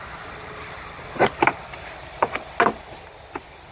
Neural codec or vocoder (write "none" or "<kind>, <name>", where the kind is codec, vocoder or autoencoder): none